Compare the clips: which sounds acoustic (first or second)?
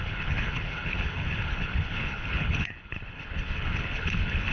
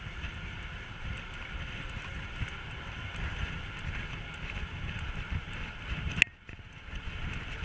second